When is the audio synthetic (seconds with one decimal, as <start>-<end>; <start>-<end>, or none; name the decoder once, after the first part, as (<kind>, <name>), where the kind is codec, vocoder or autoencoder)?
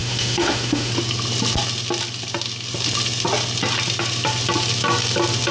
0.0-0.9 (autoencoder, DAC-VAE)